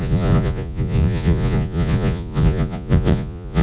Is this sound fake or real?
fake